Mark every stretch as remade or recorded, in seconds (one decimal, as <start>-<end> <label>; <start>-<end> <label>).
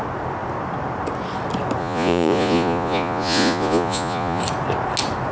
0.0-1.8 recorded; 1.8-4.4 remade; 4.4-5.3 recorded